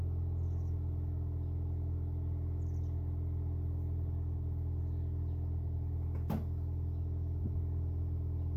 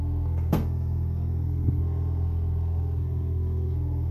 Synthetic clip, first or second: second